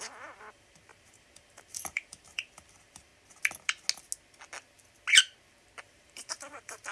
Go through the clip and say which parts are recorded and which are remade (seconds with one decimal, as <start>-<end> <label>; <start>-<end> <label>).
0.0-3.1 remade; 3.1-5.8 recorded; 5.8-6.9 remade